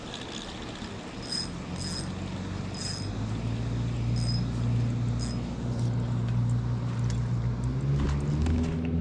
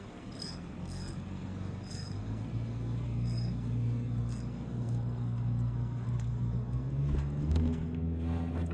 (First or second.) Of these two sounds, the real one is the first